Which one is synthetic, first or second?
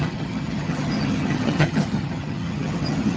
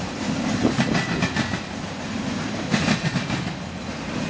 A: first